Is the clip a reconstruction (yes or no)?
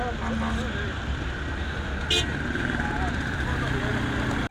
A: no